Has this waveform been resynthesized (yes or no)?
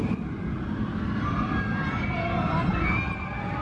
no